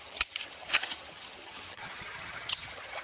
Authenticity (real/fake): fake